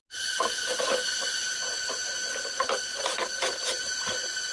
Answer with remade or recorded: recorded